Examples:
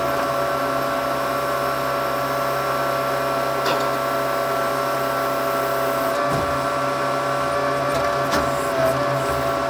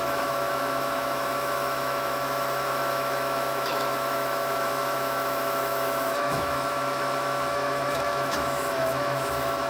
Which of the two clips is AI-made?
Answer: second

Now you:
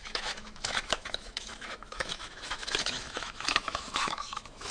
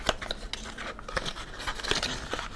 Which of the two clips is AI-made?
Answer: first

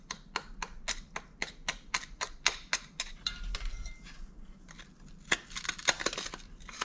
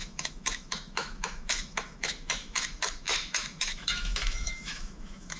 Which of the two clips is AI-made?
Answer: second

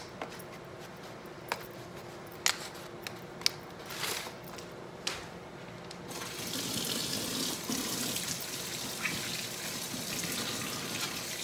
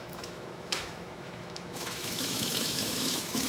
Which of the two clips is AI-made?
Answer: second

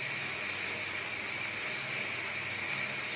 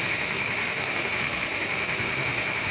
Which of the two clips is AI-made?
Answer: second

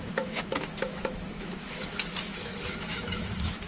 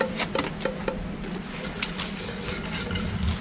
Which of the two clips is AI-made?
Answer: first